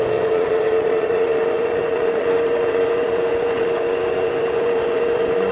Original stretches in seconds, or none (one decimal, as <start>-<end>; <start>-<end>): none